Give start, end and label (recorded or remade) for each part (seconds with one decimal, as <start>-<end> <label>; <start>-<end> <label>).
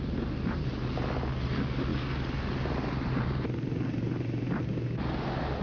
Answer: 0.0-5.6 recorded